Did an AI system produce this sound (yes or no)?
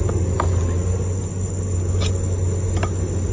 no